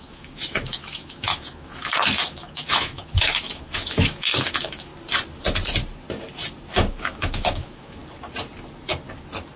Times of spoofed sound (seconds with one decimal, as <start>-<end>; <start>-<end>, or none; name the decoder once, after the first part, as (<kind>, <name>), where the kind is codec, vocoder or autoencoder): 0.0-4.9 (autoencoder, DAC-VAE); 6.9-8.0